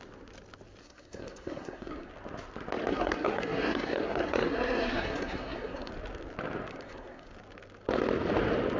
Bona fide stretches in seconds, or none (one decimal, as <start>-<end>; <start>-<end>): 0.0-0.8; 2.1-2.9; 5.9-6.7; 7.3-8.8